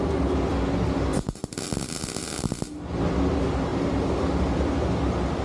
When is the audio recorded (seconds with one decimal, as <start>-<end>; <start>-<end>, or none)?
0.0-1.1; 2.2-3.7; 4.7-5.4